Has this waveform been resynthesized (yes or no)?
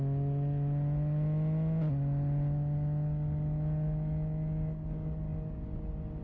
no